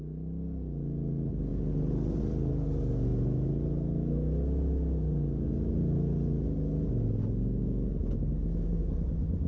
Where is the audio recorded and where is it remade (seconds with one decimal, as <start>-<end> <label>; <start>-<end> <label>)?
0.0-9.5 recorded